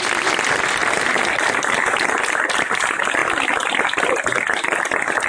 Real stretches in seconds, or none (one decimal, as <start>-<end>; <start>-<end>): 0.0-0.8; 2.2-5.3